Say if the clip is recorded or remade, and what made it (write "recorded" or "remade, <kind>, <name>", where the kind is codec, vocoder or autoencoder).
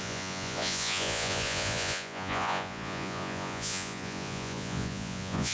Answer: remade, vocoder, Vocos